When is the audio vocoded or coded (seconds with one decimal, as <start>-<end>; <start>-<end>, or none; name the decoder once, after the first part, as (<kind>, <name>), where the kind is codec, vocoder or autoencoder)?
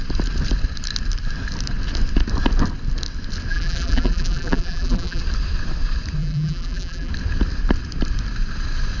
3.5-5.2 (vocoder, BigVGAN v2); 6.2-7.1